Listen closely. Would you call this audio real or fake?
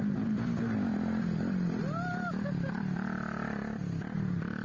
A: real